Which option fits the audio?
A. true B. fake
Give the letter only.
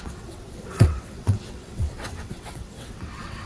B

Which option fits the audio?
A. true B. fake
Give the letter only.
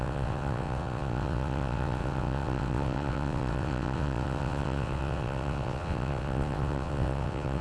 B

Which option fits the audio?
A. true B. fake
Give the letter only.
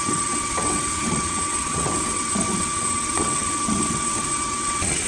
B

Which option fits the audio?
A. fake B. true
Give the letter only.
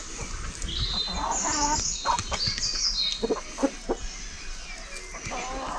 B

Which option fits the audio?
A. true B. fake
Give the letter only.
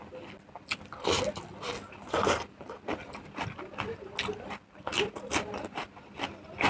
A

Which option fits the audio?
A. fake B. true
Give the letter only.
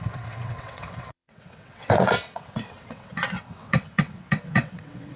A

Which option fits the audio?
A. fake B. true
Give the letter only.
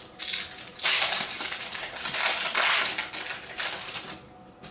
B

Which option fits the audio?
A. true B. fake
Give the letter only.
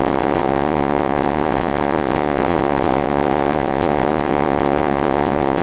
B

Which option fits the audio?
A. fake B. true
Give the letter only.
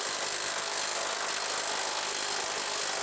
B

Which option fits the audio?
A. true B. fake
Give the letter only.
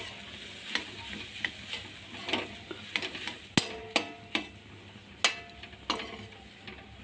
A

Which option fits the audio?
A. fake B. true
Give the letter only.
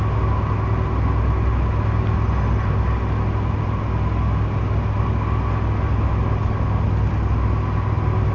B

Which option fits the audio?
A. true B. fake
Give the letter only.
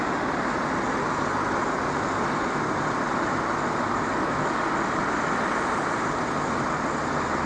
A